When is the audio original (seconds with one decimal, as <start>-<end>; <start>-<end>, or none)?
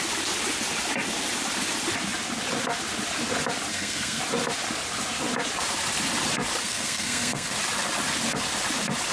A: 0.0-3.7; 4.2-6.6; 7.5-9.1